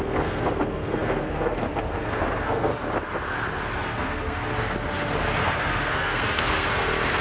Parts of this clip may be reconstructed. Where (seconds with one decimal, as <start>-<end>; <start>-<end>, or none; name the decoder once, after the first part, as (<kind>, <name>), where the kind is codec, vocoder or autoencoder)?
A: 0.0-2.7 (codec, SNAC); 3.8-4.5; 5.4-7.2